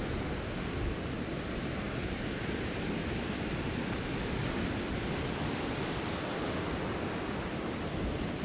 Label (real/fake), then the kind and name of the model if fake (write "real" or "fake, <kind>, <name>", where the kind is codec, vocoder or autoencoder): real